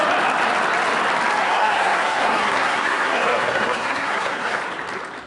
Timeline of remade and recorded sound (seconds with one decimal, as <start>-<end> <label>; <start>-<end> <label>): 0.0-1.4 recorded; 1.4-4.6 remade; 4.6-5.3 recorded